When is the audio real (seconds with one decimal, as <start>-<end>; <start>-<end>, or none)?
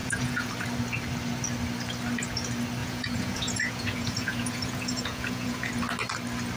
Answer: 0.5-2.8; 5.7-6.6